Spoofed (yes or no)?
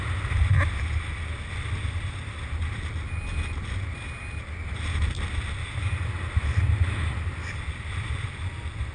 no